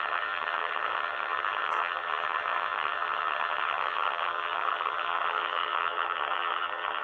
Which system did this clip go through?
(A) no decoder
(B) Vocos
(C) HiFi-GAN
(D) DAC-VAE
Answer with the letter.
C